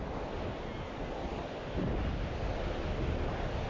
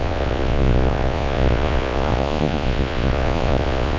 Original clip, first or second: first